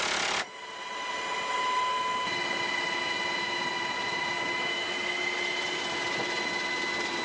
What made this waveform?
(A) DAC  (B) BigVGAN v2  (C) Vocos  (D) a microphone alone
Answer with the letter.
D